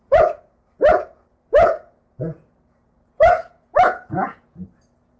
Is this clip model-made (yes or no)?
yes